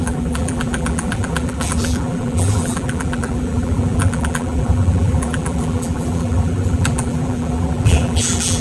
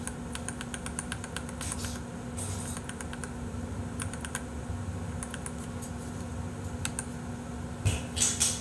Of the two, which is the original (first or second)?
second